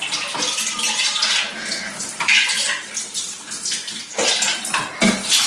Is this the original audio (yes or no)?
yes